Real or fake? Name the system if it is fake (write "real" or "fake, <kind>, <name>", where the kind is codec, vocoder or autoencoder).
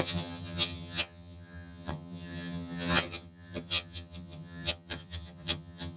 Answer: fake, vocoder, HiFi-GAN